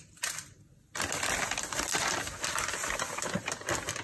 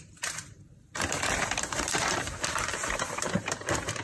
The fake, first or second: second